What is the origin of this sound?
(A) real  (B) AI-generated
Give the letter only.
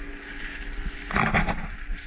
A